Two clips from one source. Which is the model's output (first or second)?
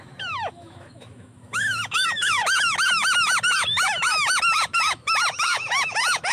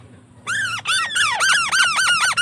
first